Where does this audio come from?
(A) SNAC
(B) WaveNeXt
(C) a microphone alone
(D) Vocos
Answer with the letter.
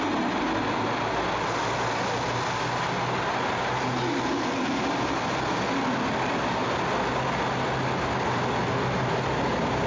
C